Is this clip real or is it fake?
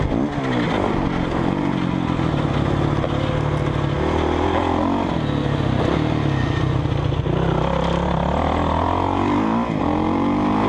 real